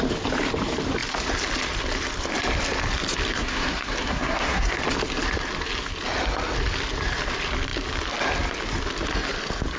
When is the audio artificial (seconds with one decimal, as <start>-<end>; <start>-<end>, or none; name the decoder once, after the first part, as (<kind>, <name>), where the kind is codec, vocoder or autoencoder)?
3.3-4.8 (codec, SNAC)